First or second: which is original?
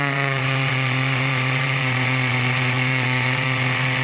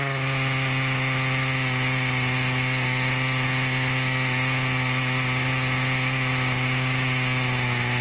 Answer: second